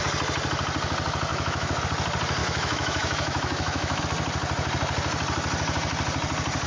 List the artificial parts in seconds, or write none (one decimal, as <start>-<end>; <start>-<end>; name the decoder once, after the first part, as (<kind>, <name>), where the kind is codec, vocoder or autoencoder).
1.3-1.8 (autoencoder, DAC-VAE); 2.4-4.0